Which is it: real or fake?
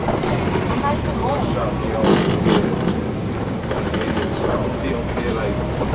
real